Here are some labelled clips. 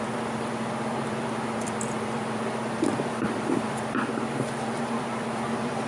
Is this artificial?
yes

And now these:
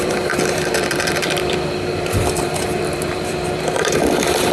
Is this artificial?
yes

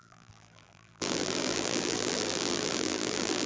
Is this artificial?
yes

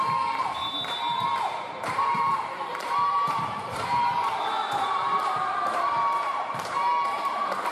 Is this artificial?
yes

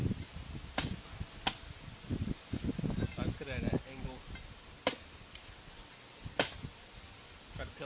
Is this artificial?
no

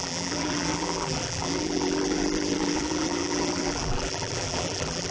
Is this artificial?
yes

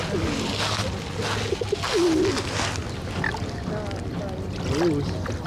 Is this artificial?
no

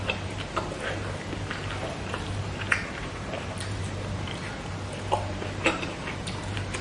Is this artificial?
yes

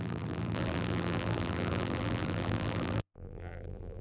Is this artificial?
yes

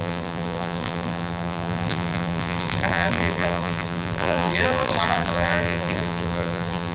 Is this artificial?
yes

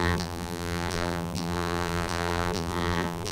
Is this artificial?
yes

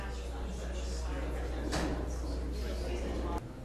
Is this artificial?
no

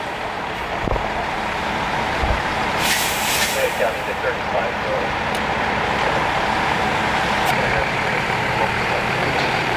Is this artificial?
yes